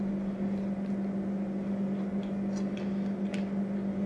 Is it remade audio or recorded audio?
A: recorded